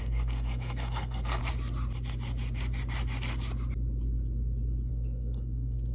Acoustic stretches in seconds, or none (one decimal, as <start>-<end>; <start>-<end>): 1.4-4.9

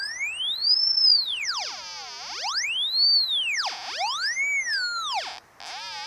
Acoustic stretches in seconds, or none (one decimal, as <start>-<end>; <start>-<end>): 0.0-0.6; 1.7-6.1

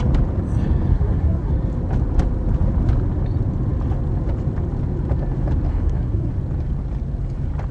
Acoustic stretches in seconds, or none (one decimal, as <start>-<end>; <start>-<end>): 0.0-0.9; 1.5-5.7; 6.3-7.7

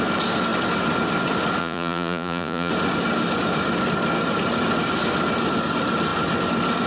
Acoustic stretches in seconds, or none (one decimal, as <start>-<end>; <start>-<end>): 0.0-1.6; 2.7-6.9

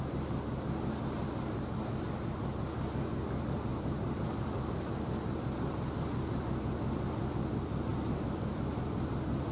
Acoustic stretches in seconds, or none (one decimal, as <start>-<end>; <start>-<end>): 0.0-3.7; 6.4-7.9; 8.8-9.5

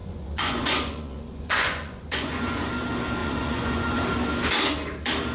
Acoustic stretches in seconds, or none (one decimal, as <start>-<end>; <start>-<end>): 2.7-3.2; 4.0-5.3